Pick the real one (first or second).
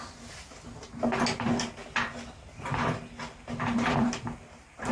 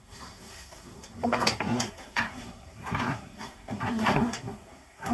first